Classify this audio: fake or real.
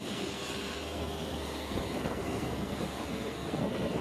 fake